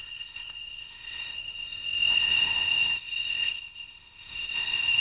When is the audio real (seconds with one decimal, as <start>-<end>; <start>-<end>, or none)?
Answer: none